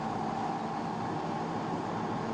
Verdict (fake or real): real